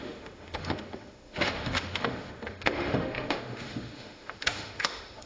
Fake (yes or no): yes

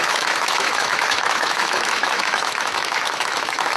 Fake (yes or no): yes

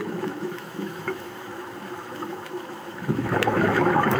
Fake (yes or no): yes